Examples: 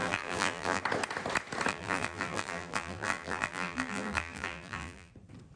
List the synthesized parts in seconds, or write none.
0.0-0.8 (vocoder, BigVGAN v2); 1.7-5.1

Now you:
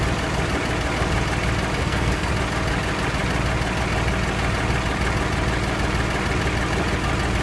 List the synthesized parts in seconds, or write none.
1.8-2.3 (codec, SNAC)

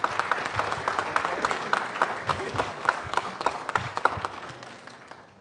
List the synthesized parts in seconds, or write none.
2.3-4.1 (codec, DAC)

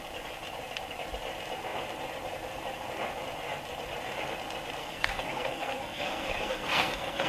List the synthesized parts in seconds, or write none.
4.8-7.3 (codec, SNAC)

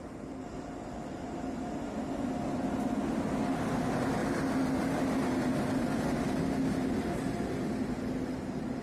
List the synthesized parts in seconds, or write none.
none